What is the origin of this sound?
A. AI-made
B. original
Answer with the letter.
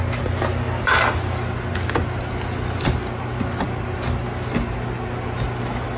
B